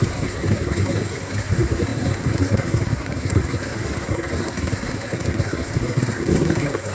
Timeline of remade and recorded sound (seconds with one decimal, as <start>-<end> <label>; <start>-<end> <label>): 0.0-6.9 remade